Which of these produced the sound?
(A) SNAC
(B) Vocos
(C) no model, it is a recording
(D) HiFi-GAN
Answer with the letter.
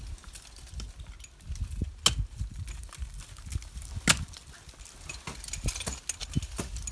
C